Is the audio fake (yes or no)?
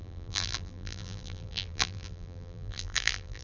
yes